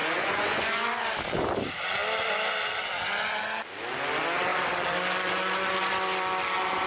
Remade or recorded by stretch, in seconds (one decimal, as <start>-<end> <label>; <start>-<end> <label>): 0.0-0.9 remade; 0.9-6.9 recorded